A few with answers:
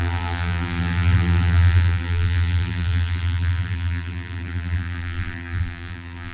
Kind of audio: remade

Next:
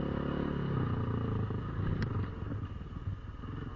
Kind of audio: recorded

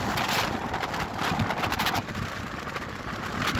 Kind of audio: recorded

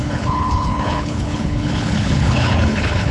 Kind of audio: remade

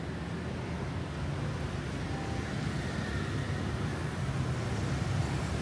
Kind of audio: recorded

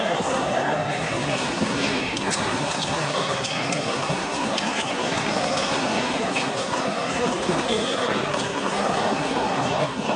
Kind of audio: remade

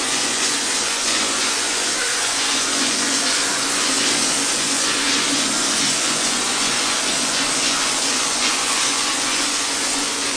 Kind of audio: remade